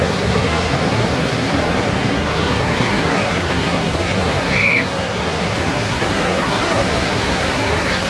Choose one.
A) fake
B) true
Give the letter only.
A